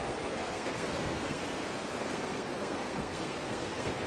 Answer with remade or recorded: remade